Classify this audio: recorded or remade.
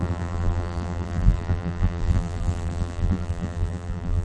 remade